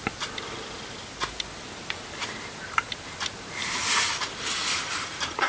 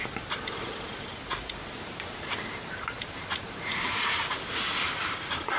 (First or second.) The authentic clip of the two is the first